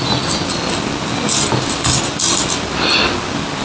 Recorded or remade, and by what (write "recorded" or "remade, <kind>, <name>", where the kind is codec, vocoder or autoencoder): recorded